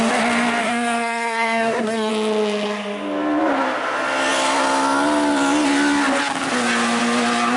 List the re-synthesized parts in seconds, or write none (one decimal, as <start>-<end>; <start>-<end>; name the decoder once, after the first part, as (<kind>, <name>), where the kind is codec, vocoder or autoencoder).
0.6-2.1 (codec, SNAC)